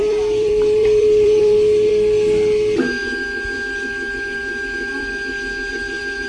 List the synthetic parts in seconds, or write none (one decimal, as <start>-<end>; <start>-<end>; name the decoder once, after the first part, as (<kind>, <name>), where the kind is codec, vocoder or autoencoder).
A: 0.0-1.9 (vocoder, BigVGAN v2); 5.7-6.3